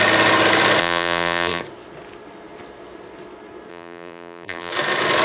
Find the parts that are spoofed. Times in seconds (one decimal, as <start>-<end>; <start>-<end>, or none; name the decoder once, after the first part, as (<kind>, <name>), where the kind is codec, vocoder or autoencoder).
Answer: 0.8-1.6 (vocoder, BigVGAN v2); 3.7-4.7